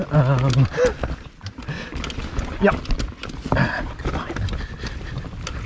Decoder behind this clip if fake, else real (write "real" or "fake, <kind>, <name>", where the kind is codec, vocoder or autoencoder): real